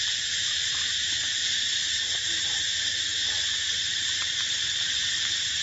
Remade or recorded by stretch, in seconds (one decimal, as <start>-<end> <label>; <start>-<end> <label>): 0.0-5.6 remade